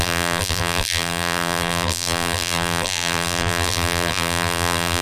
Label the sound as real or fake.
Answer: fake